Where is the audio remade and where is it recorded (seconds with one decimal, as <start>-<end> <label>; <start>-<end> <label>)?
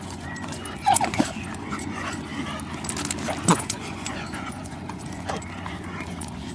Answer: 0.0-2.3 remade; 2.3-3.5 recorded; 3.5-6.5 remade